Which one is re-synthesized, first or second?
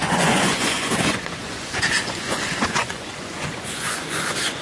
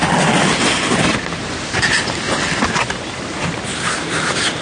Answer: first